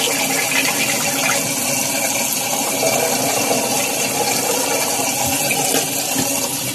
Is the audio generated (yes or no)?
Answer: no